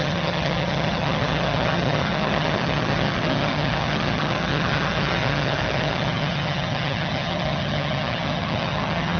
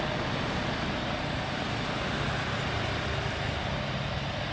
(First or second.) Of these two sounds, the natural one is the second